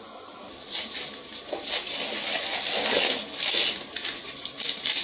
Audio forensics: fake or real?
real